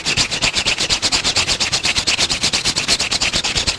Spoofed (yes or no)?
yes